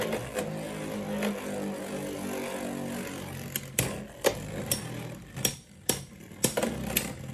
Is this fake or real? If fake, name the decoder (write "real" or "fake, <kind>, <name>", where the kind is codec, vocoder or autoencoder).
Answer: real